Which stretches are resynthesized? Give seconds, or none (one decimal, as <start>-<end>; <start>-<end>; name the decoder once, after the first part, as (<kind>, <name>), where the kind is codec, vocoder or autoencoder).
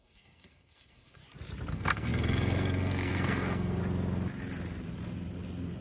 0.0-1.2 (codec, SNAC); 1.7-3.8